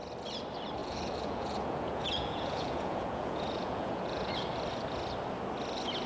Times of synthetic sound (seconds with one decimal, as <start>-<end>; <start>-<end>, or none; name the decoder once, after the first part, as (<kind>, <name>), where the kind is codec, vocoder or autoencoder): 0.8-4.3 (vocoder, Vocos)